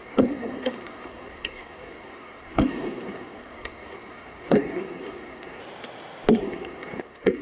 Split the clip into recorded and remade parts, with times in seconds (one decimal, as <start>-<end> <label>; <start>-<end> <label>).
0.0-5.6 remade; 5.6-6.4 recorded; 6.4-7.4 remade